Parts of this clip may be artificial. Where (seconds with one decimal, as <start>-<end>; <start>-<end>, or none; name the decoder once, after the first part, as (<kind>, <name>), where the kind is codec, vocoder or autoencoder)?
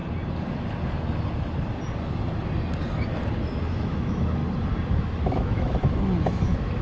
3.7-4.4 (autoencoder, DAC-VAE); 4.9-6.8